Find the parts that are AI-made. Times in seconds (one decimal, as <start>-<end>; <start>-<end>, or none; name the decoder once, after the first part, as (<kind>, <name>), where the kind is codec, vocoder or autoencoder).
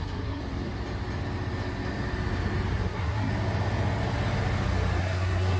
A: 0.0-0.4 (codec, SNAC); 2.7-3.3; 5.0-5.6